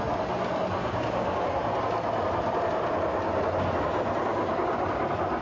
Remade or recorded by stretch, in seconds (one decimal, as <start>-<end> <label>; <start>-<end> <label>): 0.0-0.8 recorded; 0.8-1.5 remade; 1.5-4.3 recorded; 4.3-4.8 remade; 4.8-5.4 recorded

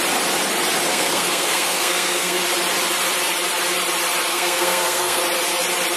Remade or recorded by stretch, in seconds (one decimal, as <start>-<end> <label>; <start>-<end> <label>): 0.0-0.9 recorded; 0.9-2.4 remade; 2.4-4.3 recorded; 4.3-5.2 remade; 5.2-6.0 recorded

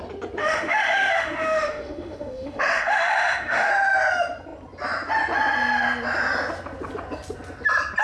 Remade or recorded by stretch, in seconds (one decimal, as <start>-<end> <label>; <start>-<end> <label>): 0.0-0.4 recorded; 0.4-3.7 remade; 3.7-8.0 recorded

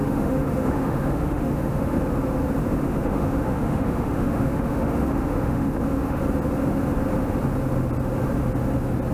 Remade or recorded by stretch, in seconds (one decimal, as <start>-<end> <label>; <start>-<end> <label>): 0.0-2.0 remade; 2.0-2.6 recorded; 2.6-6.2 remade; 6.2-9.1 recorded

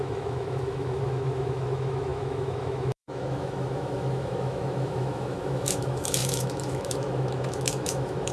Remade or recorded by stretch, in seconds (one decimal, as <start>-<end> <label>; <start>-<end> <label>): 0.0-8.3 remade